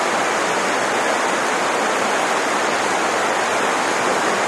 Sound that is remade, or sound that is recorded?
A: recorded